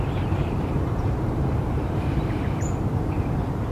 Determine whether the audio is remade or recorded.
remade